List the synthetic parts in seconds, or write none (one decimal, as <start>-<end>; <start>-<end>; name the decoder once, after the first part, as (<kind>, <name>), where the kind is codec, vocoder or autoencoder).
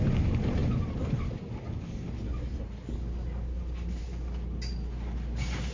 none